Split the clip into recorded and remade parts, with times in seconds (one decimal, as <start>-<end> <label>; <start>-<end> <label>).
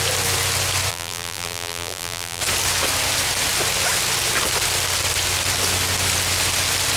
0.0-0.9 recorded; 0.9-2.4 remade; 2.4-7.0 recorded